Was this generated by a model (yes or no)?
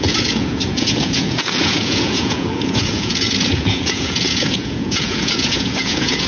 yes